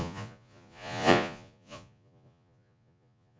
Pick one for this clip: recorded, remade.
remade